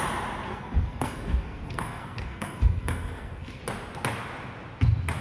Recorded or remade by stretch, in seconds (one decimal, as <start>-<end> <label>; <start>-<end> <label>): 0.0-0.5 recorded; 0.5-3.6 remade; 3.6-5.2 recorded